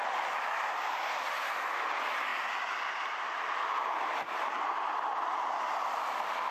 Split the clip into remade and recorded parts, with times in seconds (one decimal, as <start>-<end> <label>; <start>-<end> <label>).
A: 0.0-6.5 recorded